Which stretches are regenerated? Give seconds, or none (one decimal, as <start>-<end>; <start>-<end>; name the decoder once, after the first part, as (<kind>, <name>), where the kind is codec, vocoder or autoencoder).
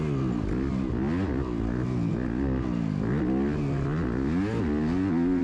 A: none